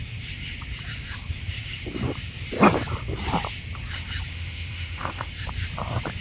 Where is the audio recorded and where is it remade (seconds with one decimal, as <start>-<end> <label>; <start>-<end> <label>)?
0.0-4.3 recorded; 4.3-5.3 remade; 5.3-6.2 recorded